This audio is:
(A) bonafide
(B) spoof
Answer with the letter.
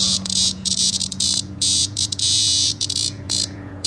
B